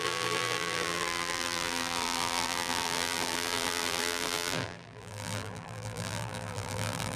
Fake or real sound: fake